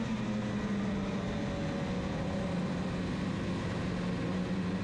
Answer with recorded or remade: recorded